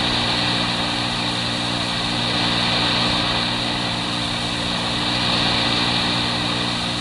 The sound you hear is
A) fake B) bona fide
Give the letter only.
B